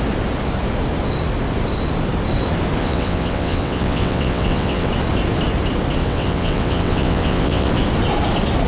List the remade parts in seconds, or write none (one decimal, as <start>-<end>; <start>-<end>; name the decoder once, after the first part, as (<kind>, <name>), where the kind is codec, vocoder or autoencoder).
2.8-4.9 (vocoder, WaveNeXt); 6.0-7.7